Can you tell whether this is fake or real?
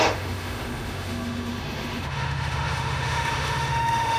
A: fake